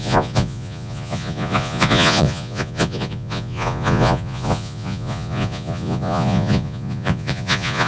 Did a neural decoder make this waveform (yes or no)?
yes